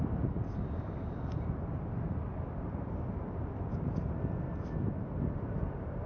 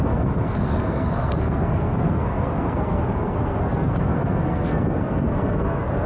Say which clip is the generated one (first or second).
second